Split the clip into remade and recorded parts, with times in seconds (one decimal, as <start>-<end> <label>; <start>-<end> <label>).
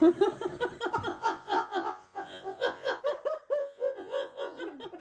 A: 0.0-1.1 recorded; 1.1-3.0 remade; 3.0-3.6 recorded; 3.6-4.6 remade; 4.6-5.0 recorded